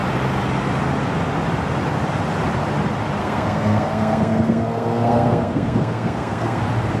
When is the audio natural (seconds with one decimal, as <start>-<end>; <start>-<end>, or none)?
0.0-3.2; 6.6-7.0